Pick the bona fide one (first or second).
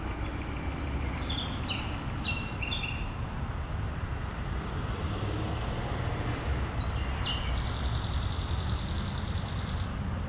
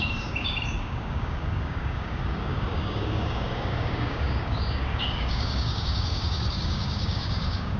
first